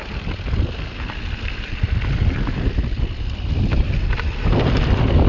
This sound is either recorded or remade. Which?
recorded